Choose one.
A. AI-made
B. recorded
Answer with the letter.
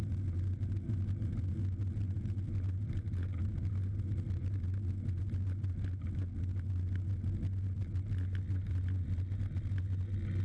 B